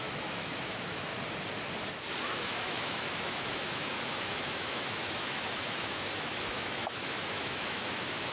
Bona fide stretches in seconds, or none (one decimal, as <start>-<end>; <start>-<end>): 1.1-2.2